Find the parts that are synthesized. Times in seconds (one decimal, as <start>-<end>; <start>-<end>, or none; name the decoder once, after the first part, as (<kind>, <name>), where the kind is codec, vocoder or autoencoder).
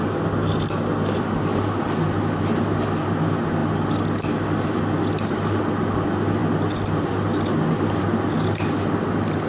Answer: 3.6-4.9 (vocoder, BigVGAN v2)